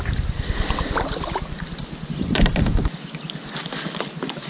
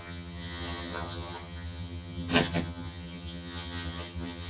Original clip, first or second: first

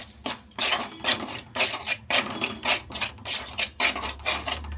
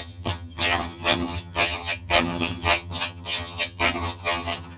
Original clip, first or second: first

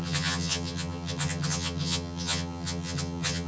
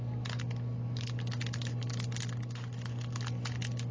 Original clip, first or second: second